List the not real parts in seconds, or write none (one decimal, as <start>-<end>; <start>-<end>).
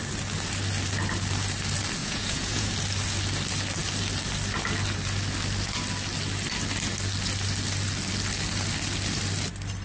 2.0-2.7